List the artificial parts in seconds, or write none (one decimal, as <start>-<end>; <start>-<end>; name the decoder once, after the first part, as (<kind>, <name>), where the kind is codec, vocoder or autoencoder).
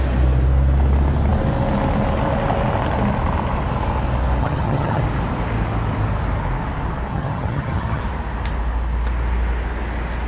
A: 4.4-5.0 (vocoder, HiFi-GAN); 7.1-8.0